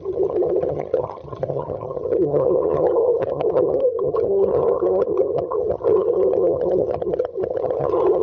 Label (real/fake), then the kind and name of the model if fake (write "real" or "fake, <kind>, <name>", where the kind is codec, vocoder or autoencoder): fake, vocoder, HiFi-GAN